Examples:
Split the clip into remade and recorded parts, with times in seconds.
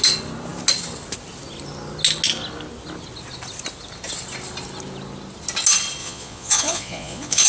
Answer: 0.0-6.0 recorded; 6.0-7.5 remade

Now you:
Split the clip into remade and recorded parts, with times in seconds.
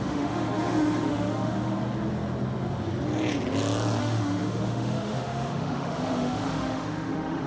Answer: 0.0-1.7 remade; 1.7-4.0 recorded; 4.0-7.5 remade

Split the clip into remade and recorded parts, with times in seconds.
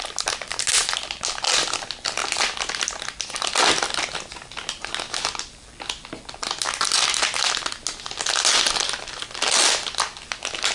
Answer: 0.0-10.7 recorded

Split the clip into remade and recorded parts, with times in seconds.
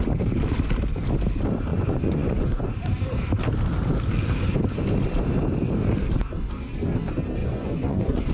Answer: 0.0-1.7 recorded; 1.7-2.6 remade; 2.6-7.4 recorded; 7.4-8.3 remade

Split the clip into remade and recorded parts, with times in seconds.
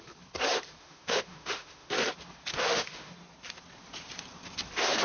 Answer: 0.0-0.8 recorded; 0.8-1.9 remade; 1.9-2.5 recorded; 2.5-3.1 remade; 3.1-5.0 recorded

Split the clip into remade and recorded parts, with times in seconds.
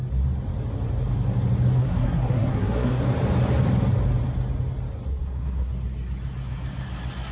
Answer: 0.0-1.8 recorded; 1.8-3.0 remade; 3.0-5.1 recorded; 5.1-5.7 remade; 5.7-7.3 recorded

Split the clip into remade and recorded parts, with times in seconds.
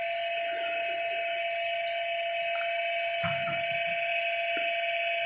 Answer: 0.0-5.3 recorded